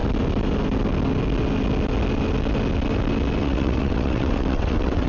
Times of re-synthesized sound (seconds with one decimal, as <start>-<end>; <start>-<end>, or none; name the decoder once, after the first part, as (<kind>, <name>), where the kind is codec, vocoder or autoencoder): 3.4-5.1 (vocoder, WaveNeXt)